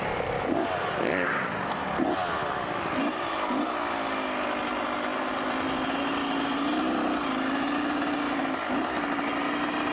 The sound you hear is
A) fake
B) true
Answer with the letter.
B